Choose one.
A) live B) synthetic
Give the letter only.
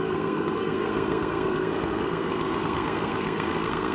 B